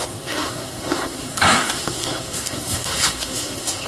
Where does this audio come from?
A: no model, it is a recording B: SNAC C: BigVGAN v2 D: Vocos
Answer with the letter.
B